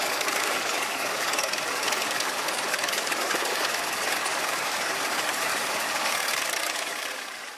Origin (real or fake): fake